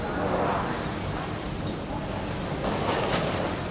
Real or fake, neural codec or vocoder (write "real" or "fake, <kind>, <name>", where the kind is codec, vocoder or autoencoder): real